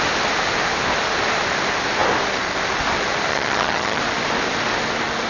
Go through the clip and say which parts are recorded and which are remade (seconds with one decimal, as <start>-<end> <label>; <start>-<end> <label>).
0.0-3.3 recorded; 3.3-4.0 remade; 4.0-5.3 recorded